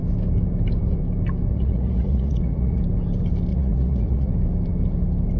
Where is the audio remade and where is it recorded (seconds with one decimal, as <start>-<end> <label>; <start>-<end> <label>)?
0.0-1.5 recorded; 1.5-2.8 remade; 2.8-3.5 recorded; 3.5-4.3 remade; 4.3-5.4 recorded